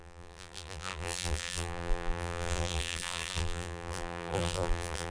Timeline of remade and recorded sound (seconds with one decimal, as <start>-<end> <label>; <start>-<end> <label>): 0.0-5.1 remade